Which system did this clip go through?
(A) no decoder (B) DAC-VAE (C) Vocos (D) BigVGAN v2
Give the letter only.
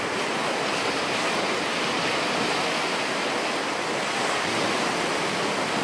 A